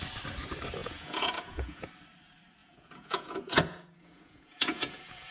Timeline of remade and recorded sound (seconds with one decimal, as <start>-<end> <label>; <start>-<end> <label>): 0.0-0.8 recorded; 0.8-1.9 remade; 1.9-2.6 recorded; 2.6-5.3 remade

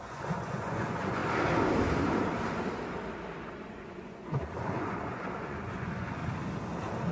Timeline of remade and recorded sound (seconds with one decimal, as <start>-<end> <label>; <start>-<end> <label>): 0.0-1.2 remade; 1.2-3.5 recorded; 3.5-6.2 remade; 6.2-7.1 recorded

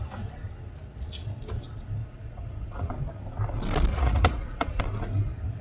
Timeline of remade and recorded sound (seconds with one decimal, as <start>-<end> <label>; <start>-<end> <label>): 0.0-2.0 recorded; 2.0-2.9 remade; 2.9-3.9 recorded; 3.9-4.8 remade; 4.8-5.6 recorded

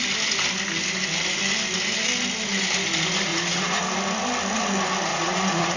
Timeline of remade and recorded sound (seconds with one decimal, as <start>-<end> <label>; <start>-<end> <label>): 0.0-3.3 recorded; 3.3-3.8 remade; 3.8-5.1 recorded; 5.1-5.8 remade

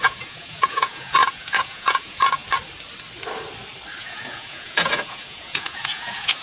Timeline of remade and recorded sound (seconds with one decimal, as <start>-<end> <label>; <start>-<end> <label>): 0.0-2.4 remade; 2.4-4.0 recorded; 4.0-6.4 remade

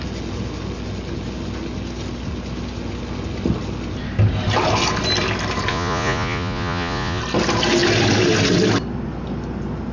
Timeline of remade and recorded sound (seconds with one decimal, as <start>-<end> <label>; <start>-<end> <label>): 0.0-5.7 recorded; 5.7-7.2 remade; 7.2-9.9 recorded

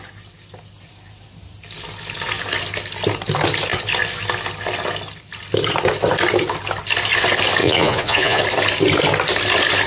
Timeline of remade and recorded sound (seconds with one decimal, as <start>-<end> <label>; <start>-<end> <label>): 0.0-7.6 recorded; 7.6-8.4 remade; 8.4-9.9 recorded

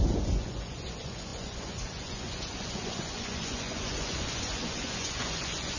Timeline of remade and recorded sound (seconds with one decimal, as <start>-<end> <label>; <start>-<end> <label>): 0.0-5.8 remade